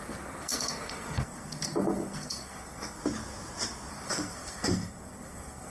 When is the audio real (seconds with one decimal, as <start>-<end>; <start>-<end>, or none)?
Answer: 3.0-3.9